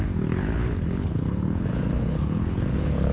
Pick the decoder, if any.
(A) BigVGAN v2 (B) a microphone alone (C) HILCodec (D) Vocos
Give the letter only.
C